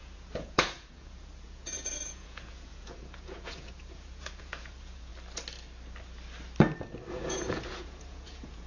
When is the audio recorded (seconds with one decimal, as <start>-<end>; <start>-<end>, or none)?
5.1-7.1